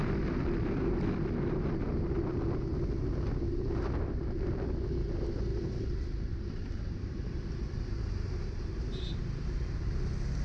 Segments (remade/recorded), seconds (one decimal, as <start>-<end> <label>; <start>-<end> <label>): 0.0-5.5 recorded; 5.5-9.9 remade; 9.9-10.4 recorded